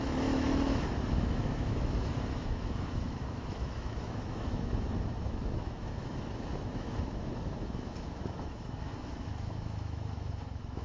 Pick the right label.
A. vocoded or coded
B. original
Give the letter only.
A